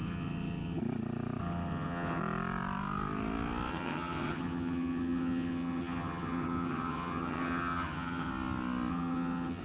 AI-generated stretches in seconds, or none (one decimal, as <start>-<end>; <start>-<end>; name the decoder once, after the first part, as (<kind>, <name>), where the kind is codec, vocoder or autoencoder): 0.0-0.8 (vocoder, HiFi-GAN); 1.4-2.2; 3.7-8.3; 8.9-9.6